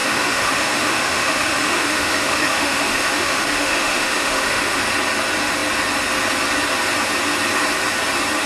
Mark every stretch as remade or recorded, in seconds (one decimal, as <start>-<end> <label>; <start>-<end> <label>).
0.0-4.8 remade; 4.8-8.5 recorded